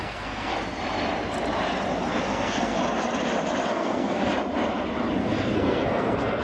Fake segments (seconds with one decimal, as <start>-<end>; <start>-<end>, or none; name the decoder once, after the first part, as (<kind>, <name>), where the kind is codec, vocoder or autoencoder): 0.0-0.5 (codec, SNAC); 2.2-2.8; 3.7-4.3; 5.2-6.4